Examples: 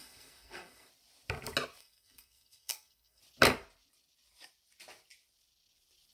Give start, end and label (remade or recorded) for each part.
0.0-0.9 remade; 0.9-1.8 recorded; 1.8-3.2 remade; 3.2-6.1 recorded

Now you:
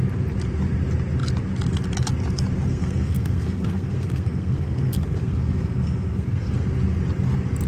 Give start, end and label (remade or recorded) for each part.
0.0-2.7 recorded; 2.7-6.7 remade; 6.7-7.7 recorded

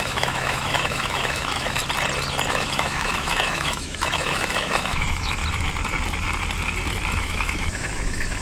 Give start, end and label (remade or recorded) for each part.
0.0-1.8 remade; 1.8-2.5 recorded; 2.5-5.4 remade; 5.4-7.2 recorded; 7.2-8.4 remade

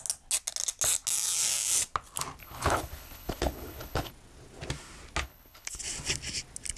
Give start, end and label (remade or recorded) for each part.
0.0-2.4 recorded; 2.4-4.1 remade; 4.1-5.2 recorded; 5.2-5.8 remade; 5.8-6.8 recorded